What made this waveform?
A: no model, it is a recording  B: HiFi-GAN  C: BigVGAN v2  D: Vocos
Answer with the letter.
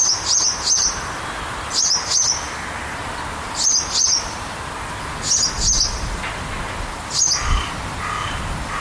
A